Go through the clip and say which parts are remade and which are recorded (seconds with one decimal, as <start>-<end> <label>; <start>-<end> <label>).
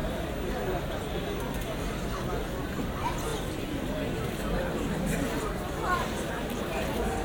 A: 0.0-7.2 recorded